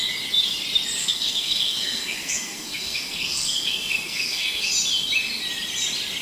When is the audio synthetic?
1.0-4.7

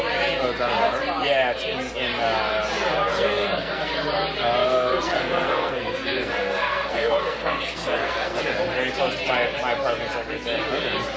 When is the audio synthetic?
3.1-3.9; 4.6-8.4

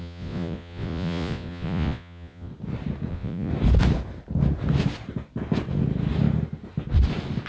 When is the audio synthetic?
0.0-2.5; 3.1-3.5

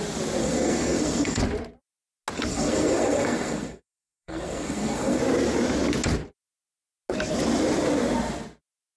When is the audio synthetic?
0.4-1.4; 2.5-5.2